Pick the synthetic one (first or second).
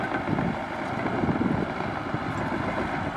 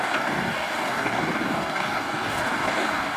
second